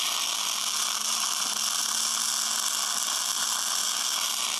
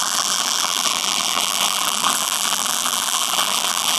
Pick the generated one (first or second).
second